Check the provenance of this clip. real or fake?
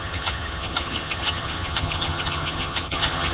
fake